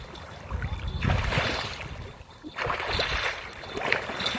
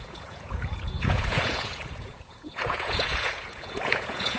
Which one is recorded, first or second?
first